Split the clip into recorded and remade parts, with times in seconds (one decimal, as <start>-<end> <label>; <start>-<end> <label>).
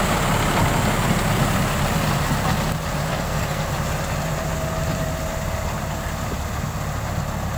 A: 0.0-3.1 recorded; 3.1-3.7 remade; 3.7-7.6 recorded